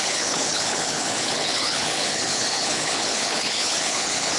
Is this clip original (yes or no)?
no